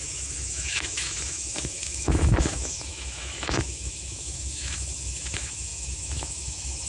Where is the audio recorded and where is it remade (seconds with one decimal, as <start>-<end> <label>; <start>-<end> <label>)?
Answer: 0.0-6.9 remade